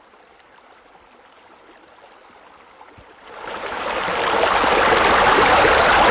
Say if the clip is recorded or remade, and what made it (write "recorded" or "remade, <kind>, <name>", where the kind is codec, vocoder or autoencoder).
recorded